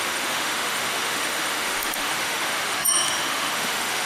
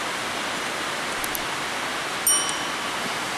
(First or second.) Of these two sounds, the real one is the second